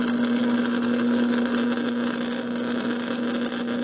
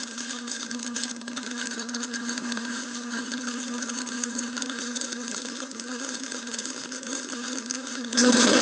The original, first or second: first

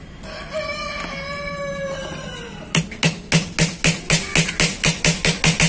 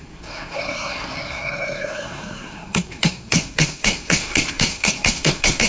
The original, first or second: first